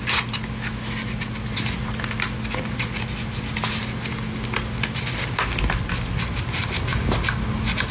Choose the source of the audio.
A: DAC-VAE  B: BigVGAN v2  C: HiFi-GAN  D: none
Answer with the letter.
D